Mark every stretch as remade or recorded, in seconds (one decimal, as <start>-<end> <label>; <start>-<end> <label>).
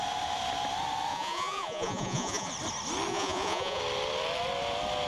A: 0.0-1.1 recorded; 1.1-2.5 remade; 2.5-3.1 recorded; 3.1-3.8 remade; 3.8-5.1 recorded